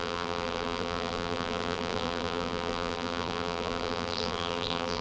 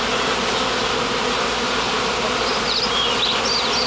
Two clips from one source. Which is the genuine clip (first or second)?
second